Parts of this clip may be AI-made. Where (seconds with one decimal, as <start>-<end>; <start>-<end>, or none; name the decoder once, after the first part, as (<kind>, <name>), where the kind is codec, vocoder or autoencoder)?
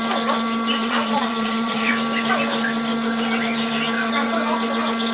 0.8-1.9 (vocoder, Vocos)